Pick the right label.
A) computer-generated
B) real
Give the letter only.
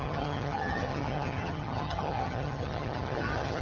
A